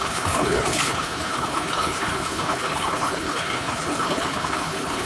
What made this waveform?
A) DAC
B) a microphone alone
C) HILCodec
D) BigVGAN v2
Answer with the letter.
C